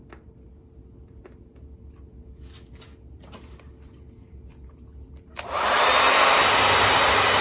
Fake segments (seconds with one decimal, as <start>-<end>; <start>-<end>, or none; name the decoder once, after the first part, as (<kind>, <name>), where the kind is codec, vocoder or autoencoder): none